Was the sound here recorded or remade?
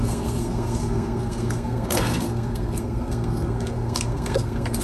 remade